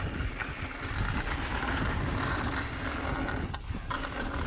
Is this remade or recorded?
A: recorded